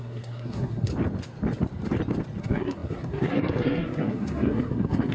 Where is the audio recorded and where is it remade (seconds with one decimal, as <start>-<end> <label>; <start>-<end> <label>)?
0.0-0.9 remade; 0.9-2.4 recorded; 2.4-5.1 remade